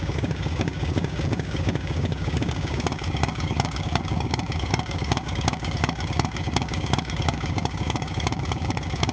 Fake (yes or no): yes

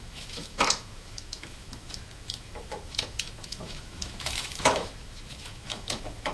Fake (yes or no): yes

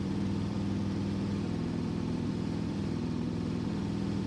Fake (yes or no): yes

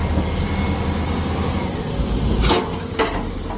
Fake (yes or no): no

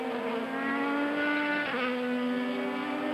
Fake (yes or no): no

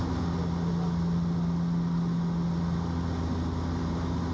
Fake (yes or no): no